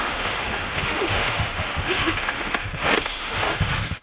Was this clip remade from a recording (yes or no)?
yes